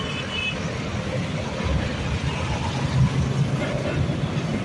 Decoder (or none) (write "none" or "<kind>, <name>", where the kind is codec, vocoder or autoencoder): none